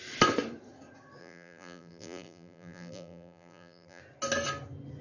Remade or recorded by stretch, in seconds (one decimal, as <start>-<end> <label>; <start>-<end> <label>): 0.0-1.2 recorded; 1.2-4.0 remade; 4.0-5.0 recorded